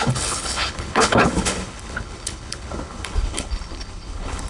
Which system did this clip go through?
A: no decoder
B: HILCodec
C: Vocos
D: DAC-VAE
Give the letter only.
B